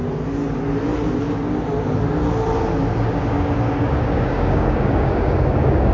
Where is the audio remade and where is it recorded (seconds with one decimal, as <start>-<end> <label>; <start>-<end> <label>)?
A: 0.0-3.0 recorded; 3.0-5.9 remade

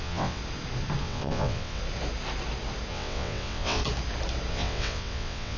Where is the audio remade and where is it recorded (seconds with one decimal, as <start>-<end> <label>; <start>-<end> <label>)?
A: 0.0-0.4 remade; 0.4-1.0 recorded; 1.0-1.8 remade; 1.8-2.9 recorded; 2.9-3.8 remade; 3.8-4.5 recorded; 4.5-5.6 remade